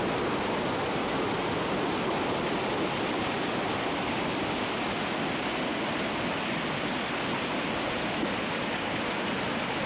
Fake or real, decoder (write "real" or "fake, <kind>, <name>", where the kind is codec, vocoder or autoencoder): real